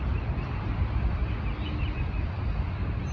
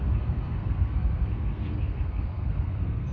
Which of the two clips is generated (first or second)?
second